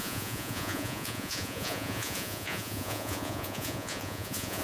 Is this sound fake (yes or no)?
yes